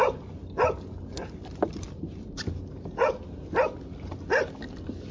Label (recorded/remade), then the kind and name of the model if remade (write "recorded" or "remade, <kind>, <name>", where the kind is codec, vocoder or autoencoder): recorded